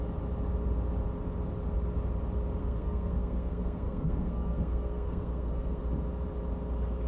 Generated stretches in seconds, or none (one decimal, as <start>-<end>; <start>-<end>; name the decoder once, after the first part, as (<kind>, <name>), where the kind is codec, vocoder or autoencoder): 2.6-5.8 (codec, SNAC)